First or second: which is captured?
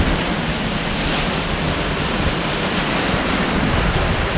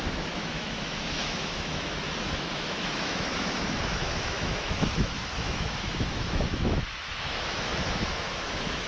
first